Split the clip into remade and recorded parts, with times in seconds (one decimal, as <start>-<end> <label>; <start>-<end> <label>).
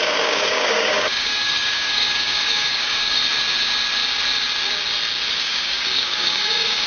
0.0-3.2 remade; 3.2-5.3 recorded; 5.3-6.9 remade